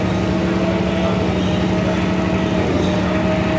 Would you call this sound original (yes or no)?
yes